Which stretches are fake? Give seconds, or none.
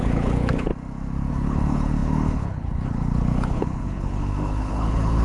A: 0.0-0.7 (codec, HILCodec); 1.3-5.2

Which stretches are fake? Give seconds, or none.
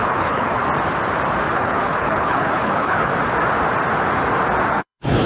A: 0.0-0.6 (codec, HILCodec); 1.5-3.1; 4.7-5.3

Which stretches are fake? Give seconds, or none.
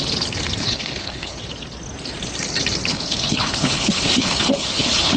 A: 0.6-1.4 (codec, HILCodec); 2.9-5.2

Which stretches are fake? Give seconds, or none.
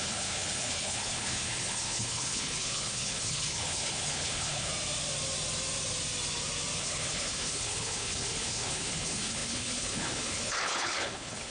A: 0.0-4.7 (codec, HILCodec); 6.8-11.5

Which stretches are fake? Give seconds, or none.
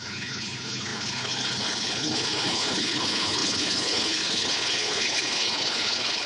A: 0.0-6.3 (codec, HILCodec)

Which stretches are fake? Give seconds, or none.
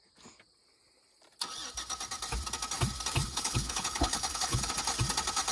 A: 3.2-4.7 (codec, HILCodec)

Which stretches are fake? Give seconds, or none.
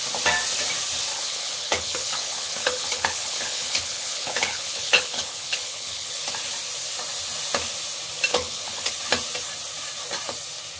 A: 1.1-6.2 (codec, HILCodec); 8.3-8.9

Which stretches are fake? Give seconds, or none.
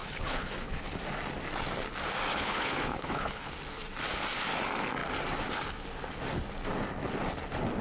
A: 0.0-0.9 (codec, HILCodec); 2.3-3.5